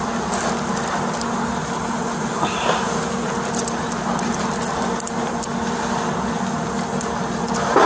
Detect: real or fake real